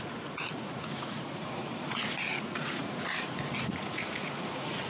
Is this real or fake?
fake